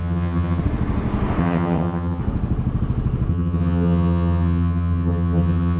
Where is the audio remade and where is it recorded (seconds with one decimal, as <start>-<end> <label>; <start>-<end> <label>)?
0.0-0.6 remade; 0.6-1.4 recorded; 1.4-2.2 remade; 2.2-3.3 recorded; 3.3-5.8 remade